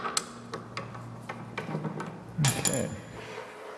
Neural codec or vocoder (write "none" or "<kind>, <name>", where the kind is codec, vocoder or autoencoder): none